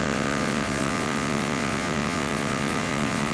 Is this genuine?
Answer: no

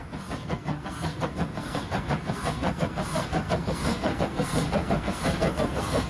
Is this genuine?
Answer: no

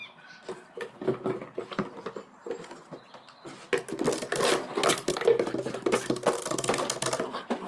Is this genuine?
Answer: yes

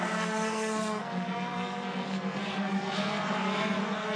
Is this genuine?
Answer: no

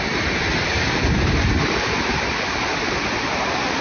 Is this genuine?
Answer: no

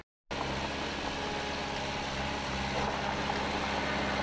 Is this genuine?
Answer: yes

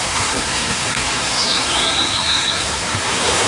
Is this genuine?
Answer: no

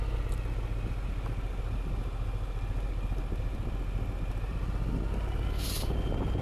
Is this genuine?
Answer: yes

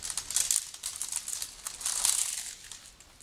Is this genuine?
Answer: yes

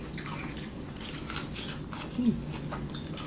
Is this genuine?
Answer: yes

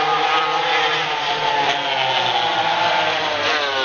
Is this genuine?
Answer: yes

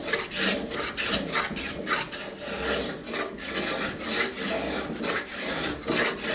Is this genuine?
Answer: yes